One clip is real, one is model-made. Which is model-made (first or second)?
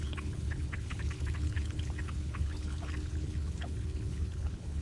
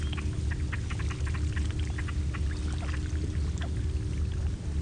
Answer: first